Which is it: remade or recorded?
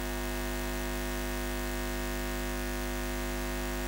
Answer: recorded